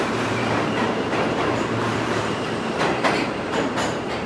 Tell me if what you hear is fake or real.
fake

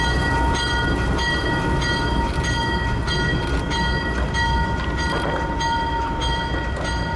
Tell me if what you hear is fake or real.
real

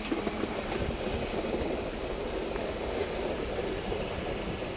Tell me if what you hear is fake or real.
real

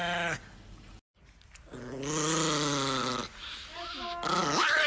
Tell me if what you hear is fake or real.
real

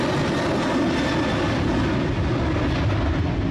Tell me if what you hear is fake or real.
real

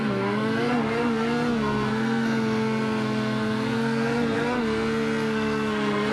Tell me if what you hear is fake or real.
fake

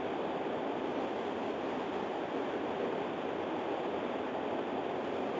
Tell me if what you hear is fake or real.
real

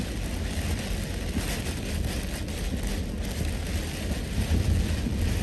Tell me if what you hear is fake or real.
real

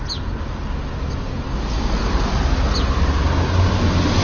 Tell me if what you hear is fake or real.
real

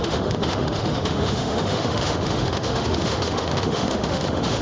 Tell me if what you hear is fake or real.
fake